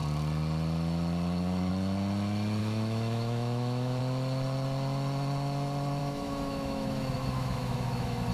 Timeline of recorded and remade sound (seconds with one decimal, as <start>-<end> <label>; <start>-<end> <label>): 0.0-2.6 recorded; 2.6-4.0 remade; 4.0-6.0 recorded; 6.0-8.3 remade